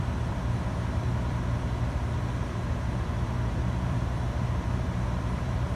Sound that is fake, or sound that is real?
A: fake